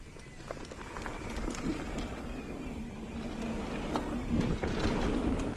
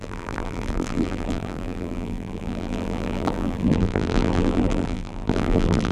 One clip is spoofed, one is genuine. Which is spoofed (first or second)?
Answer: second